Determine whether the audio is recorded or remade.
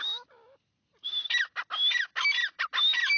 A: recorded